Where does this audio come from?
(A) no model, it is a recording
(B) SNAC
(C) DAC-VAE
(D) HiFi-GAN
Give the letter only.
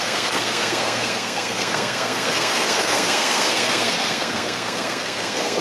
B